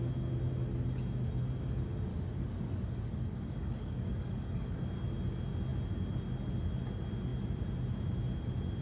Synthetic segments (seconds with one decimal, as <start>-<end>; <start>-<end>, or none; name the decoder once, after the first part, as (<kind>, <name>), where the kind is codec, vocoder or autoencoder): 2.1-4.8 (codec, DAC)